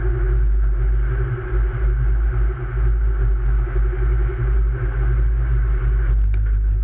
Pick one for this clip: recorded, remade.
recorded